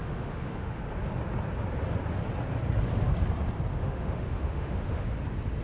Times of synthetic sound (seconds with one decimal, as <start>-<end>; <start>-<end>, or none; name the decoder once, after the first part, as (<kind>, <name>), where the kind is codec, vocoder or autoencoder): 0.0-0.8 (autoencoder, DAC-VAE); 3.7-5.1